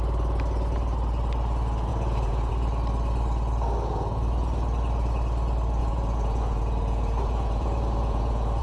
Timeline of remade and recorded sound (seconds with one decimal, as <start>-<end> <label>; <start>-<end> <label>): 0.0-1.9 recorded; 1.9-2.5 remade; 2.5-5.8 recorded; 5.8-8.6 remade

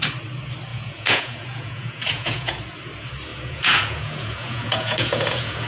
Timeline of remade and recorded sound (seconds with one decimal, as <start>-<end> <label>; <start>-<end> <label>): 0.0-0.7 recorded; 0.7-2.6 remade; 2.6-3.3 recorded; 3.3-5.7 remade

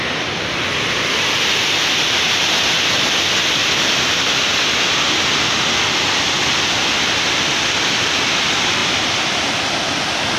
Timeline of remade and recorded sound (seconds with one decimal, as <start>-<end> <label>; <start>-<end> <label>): 0.0-10.4 recorded

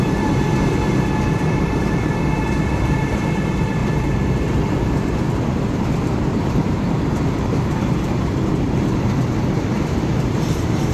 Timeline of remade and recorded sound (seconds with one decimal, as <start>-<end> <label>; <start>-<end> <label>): 0.0-0.5 remade; 0.5-1.5 recorded; 1.5-10.9 remade